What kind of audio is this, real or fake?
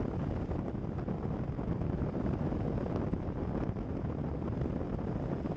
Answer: real